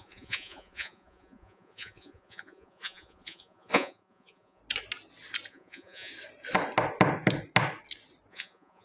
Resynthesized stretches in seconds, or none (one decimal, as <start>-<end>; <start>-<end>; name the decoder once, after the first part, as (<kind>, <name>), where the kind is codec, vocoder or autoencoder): 0.0-4.6 (vocoder, Vocos); 5.5-6.1; 8.3-8.8